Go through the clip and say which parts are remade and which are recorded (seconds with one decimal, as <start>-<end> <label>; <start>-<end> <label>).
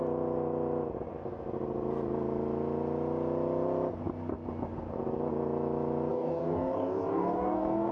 0.0-6.1 recorded; 6.1-7.9 remade